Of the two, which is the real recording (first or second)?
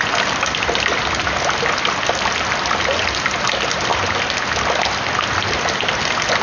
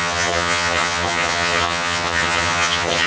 first